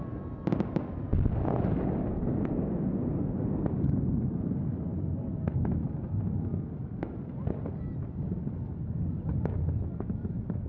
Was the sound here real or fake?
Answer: real